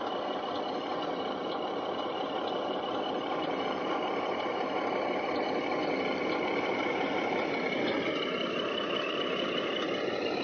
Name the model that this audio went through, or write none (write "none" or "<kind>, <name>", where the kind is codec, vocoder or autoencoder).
vocoder, BigVGAN v2